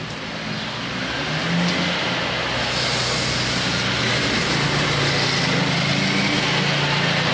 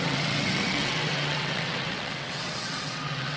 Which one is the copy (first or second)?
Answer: second